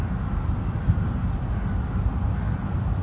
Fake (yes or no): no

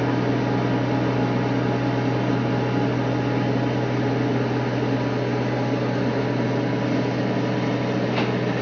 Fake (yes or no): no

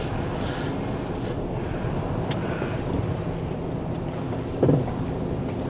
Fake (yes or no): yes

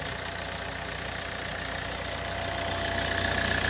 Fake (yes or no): no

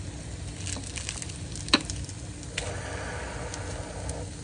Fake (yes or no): no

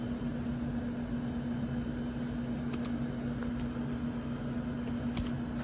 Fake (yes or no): no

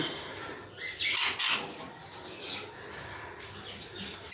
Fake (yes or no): yes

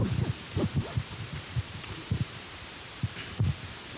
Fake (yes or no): yes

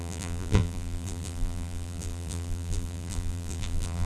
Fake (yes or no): yes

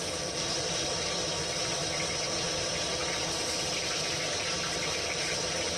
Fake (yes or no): no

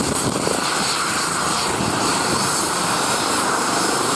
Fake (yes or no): yes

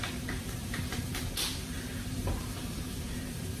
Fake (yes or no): yes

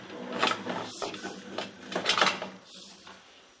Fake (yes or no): no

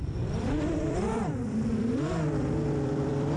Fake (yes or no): yes